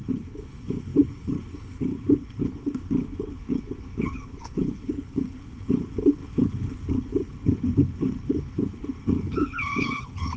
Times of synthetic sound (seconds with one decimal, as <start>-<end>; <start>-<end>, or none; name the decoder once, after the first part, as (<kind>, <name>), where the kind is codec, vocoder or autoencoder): 0.0-10.4 (codec, HILCodec)